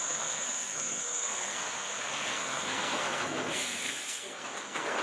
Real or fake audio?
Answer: fake